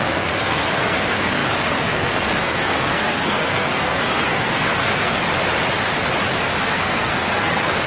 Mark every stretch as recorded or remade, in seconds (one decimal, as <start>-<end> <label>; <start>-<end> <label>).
0.0-5.2 remade; 5.2-6.6 recorded; 6.6-7.9 remade